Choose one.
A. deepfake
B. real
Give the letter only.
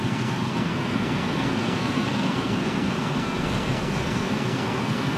A